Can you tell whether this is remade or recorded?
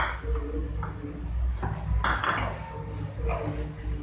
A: recorded